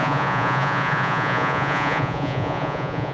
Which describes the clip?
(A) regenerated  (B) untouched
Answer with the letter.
A